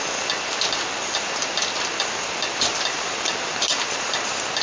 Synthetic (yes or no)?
no